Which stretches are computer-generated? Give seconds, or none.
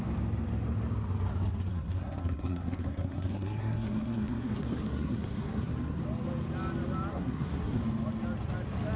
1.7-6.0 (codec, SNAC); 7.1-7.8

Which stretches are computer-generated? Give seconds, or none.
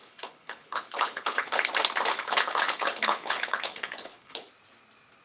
0.0-1.7 (codec, HILCodec); 2.1-4.5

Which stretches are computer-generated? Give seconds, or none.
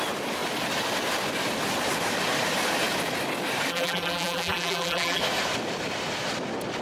3.7-5.2 (vocoder, BigVGAN v2)